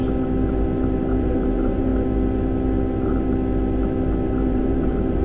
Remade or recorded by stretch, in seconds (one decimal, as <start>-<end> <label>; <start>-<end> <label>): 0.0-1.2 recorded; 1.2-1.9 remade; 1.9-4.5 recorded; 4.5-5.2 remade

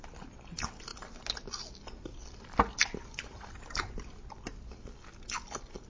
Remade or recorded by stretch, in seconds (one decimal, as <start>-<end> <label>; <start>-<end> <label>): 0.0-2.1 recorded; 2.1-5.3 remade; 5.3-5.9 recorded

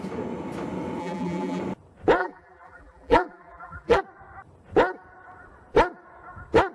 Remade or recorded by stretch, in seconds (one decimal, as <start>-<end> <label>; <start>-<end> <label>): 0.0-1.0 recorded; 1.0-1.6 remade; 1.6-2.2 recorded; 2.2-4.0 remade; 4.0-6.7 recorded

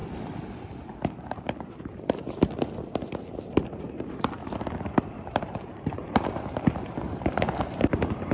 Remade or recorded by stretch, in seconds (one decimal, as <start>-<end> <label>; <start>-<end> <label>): 0.0-1.1 recorded; 1.1-8.3 remade